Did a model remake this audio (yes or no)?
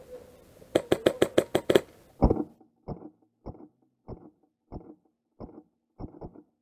no